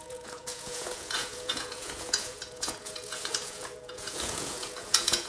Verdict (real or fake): fake